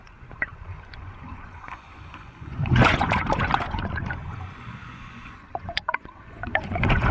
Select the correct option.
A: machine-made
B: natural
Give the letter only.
A